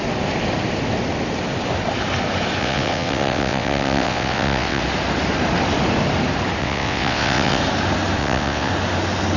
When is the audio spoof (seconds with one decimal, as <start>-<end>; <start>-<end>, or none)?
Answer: 2.6-4.8; 6.6-7.6; 8.2-8.7